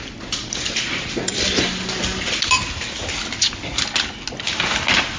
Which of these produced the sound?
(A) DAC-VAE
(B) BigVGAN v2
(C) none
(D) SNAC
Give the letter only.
C